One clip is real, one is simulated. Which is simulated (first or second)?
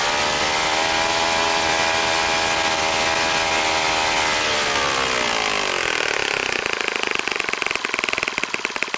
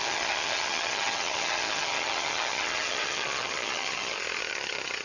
second